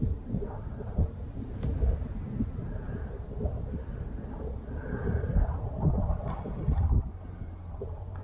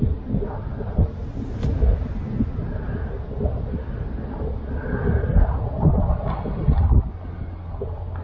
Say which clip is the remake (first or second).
first